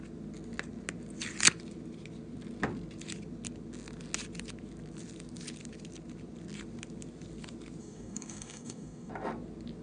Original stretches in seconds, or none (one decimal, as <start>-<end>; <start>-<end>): 0.0-7.8; 9.1-9.8